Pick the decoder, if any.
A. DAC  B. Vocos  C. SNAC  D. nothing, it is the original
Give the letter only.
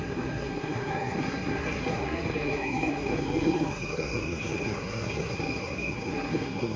C